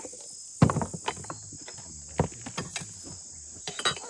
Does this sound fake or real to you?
real